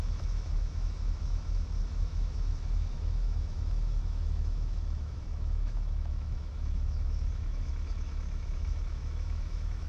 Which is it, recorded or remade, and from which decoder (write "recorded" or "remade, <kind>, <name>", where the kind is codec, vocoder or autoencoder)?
remade, autoencoder, DAC-VAE